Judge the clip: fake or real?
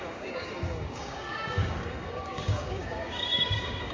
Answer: fake